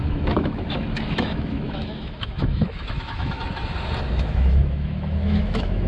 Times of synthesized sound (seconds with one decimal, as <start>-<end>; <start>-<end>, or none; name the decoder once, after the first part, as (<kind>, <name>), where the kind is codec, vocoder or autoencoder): 0.0-3.4 (autoencoder, DAC-VAE); 4.1-5.9